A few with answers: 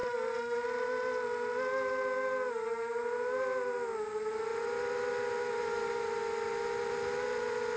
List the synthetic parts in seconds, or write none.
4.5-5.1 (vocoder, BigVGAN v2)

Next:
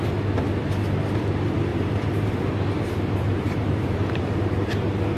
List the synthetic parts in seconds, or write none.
1.7-4.2 (vocoder, BigVGAN v2)

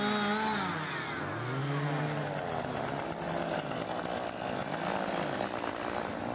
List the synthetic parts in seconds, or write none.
none

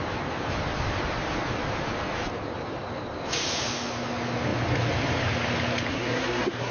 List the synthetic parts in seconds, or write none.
5.9-6.7 (codec, SNAC)

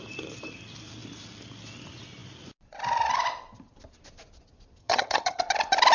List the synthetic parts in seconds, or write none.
4.8-5.4 (vocoder, HiFi-GAN)

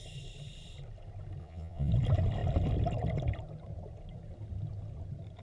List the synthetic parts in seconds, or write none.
1.4-1.9 (vocoder, Vocos)